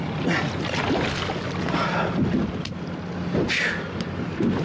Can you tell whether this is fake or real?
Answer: real